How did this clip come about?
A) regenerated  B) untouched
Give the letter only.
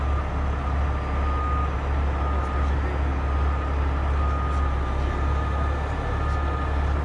B